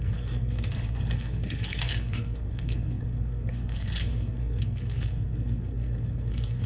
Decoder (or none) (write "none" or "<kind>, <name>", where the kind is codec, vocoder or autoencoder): codec, SNAC